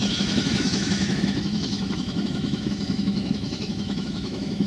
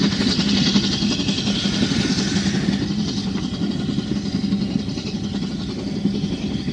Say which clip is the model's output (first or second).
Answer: first